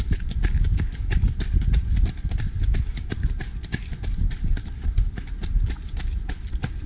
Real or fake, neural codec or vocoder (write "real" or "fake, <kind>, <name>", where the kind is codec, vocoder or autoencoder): real